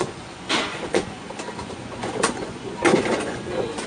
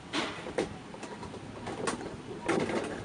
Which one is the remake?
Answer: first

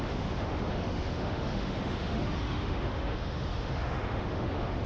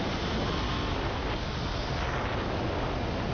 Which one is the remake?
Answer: first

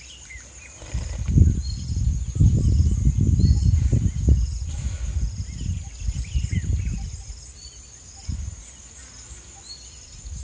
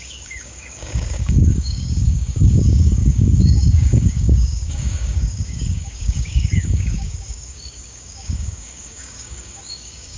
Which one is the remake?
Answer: second